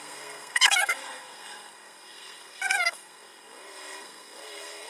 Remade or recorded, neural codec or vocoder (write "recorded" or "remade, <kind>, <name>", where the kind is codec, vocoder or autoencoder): remade, codec, SNAC